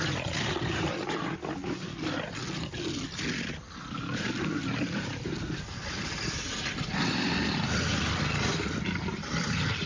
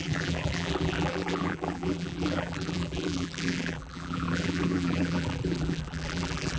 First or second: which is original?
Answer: first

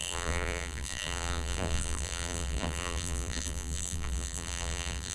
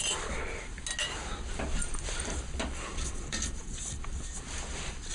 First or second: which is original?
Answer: second